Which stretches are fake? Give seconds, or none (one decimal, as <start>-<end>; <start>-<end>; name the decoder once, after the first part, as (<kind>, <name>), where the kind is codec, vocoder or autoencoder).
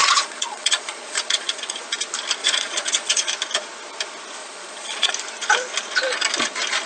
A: 0.0-1.8 (vocoder, Vocos); 2.4-3.3; 4.4-5.1